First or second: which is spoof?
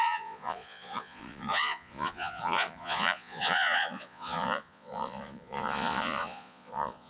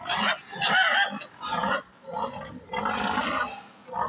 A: first